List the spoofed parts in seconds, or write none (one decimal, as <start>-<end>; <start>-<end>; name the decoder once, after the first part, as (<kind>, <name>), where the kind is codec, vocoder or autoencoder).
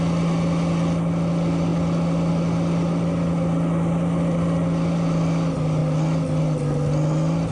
none